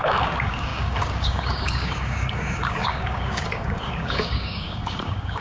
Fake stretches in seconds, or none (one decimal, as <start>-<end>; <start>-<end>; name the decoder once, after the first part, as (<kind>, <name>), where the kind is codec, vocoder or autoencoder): 0.0-5.4 (codec, DAC)